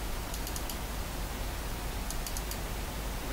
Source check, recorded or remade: recorded